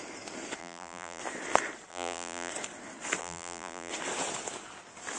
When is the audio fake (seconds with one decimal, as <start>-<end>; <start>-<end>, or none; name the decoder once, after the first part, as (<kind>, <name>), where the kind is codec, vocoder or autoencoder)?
0.6-1.2 (vocoder, BigVGAN v2); 1.9-2.5; 3.2-3.9